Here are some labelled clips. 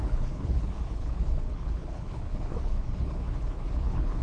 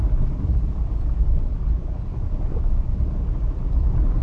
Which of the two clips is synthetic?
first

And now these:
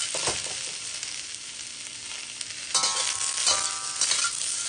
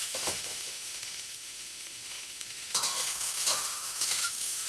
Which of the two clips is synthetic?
second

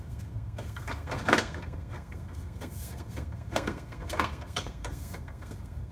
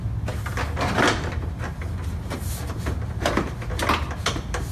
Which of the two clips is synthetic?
first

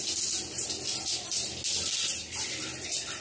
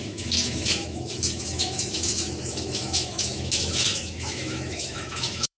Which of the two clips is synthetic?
second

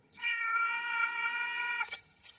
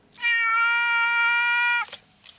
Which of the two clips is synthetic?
first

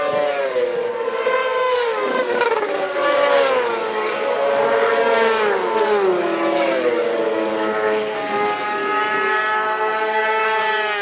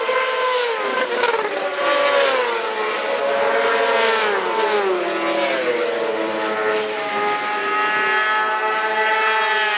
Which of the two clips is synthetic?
first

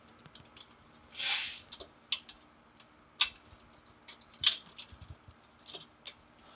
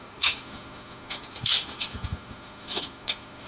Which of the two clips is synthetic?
second